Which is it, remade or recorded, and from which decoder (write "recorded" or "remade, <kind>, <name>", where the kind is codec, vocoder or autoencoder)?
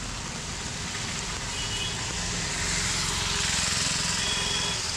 recorded